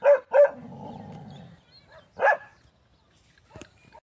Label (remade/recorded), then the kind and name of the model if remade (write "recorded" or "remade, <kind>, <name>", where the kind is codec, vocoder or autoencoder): recorded